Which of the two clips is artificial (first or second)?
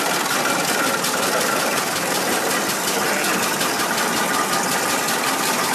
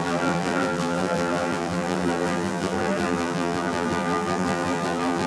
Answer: second